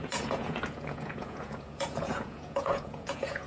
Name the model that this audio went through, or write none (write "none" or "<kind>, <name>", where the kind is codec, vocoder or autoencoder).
vocoder, Vocos